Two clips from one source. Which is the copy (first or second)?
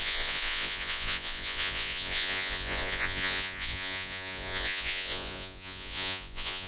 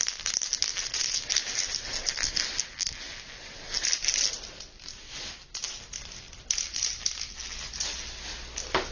first